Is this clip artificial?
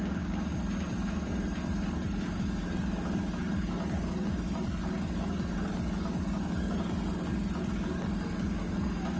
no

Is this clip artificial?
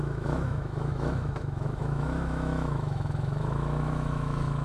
yes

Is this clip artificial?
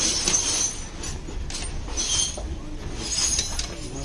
no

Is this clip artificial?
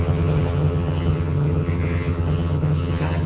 yes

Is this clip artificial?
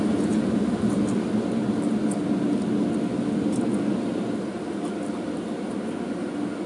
no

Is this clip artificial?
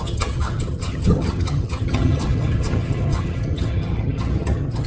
yes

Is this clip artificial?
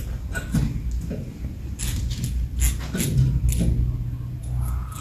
no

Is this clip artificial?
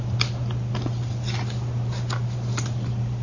no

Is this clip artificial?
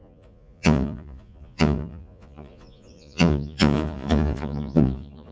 yes